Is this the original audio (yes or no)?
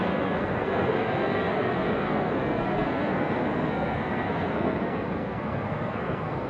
no